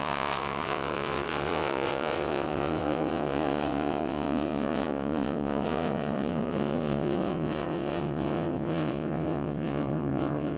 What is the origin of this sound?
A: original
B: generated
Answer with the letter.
B